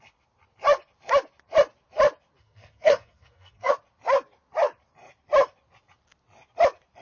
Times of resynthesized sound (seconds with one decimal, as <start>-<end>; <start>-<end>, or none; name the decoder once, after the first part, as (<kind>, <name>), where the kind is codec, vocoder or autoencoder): 2.4-3.7 (codec, SNAC)